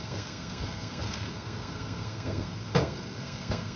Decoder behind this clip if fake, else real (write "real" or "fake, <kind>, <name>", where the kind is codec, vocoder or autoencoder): fake, codec, SNAC